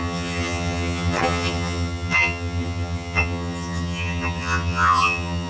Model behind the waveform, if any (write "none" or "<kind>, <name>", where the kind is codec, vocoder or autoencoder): vocoder, HiFi-GAN